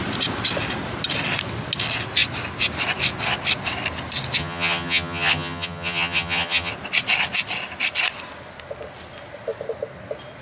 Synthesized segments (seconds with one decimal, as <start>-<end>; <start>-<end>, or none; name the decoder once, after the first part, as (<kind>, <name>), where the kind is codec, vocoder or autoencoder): 4.4-6.7 (vocoder, HiFi-GAN)